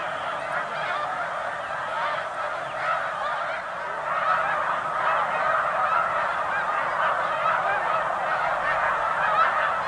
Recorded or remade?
recorded